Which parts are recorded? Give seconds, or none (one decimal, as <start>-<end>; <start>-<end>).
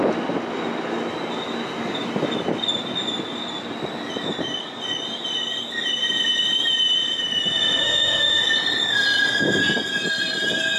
0.0-7.8; 8.4-10.8